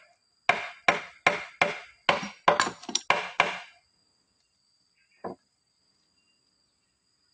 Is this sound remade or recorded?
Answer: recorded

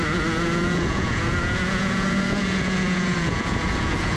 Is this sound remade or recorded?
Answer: remade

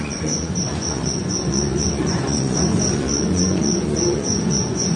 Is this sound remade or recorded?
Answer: remade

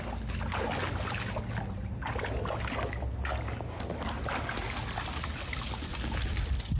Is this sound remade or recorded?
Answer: recorded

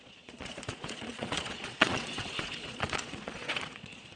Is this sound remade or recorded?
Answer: remade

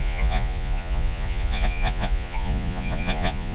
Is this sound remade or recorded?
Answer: remade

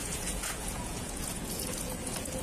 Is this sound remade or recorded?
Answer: remade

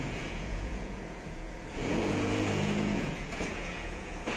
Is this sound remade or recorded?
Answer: remade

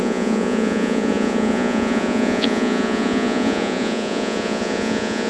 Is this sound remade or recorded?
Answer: remade